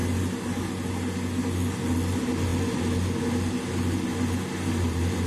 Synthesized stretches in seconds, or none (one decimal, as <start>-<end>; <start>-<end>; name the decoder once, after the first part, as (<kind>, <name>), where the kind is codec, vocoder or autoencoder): none